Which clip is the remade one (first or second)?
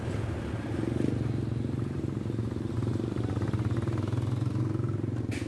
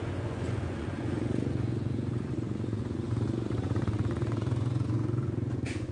second